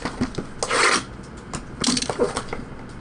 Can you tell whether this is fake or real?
real